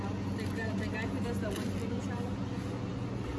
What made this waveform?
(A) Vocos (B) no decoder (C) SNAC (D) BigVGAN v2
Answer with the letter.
B